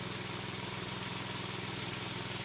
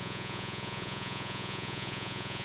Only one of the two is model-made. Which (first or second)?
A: second